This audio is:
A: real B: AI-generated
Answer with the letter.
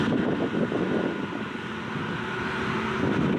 A